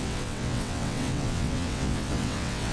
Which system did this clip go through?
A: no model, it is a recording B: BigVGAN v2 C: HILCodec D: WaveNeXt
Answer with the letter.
D